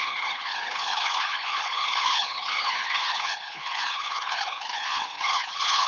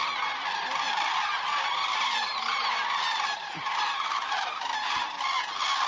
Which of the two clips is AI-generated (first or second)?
first